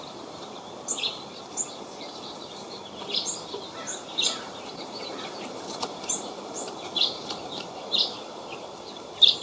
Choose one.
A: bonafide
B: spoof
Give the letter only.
B